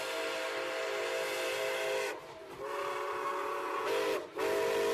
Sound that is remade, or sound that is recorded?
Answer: recorded